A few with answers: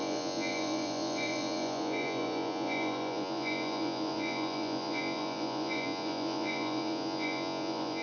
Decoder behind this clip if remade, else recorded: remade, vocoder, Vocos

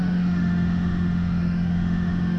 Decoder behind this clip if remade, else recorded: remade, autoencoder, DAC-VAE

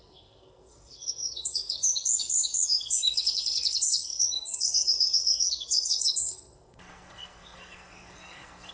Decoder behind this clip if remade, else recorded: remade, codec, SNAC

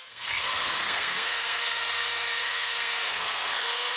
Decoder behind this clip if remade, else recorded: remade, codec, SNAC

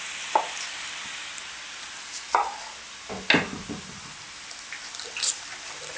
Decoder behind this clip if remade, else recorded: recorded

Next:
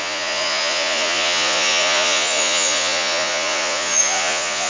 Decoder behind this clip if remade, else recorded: remade, vocoder, Vocos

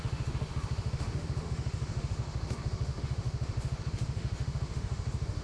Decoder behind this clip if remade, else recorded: remade, autoencoder, DAC-VAE